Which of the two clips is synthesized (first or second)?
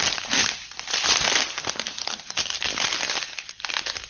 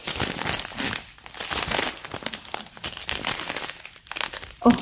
first